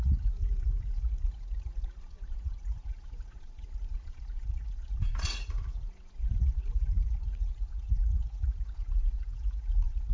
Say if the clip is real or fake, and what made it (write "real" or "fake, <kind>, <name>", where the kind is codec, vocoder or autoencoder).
fake, vocoder, Vocos